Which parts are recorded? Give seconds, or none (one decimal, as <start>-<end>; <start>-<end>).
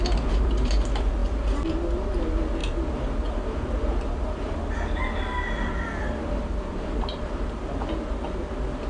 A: 0.0-8.9